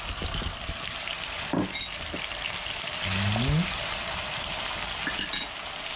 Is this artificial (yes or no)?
no